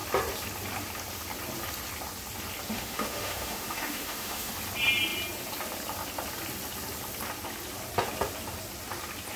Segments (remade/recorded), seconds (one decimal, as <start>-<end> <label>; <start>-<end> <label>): 0.0-2.7 recorded; 2.7-4.5 remade; 4.5-9.4 recorded